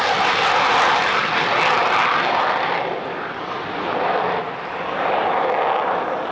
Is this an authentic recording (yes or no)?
yes